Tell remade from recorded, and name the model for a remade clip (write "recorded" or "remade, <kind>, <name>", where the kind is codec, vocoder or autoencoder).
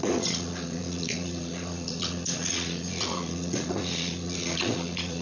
remade, vocoder, Vocos